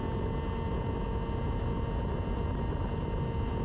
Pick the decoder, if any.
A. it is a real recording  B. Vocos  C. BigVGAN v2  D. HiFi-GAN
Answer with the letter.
A